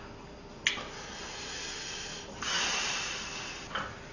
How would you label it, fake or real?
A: real